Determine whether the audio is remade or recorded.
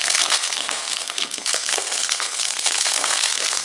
remade